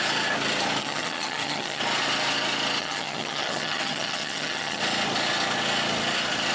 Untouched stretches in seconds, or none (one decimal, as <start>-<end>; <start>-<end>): 0.0-0.8; 1.8-2.8; 4.8-6.5